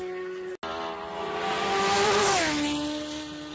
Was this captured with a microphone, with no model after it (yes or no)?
yes